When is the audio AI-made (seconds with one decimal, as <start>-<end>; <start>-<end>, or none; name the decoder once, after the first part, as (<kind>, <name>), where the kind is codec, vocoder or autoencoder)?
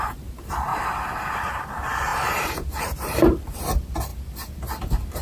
0.0-4.1 (vocoder, BigVGAN v2); 4.8-5.2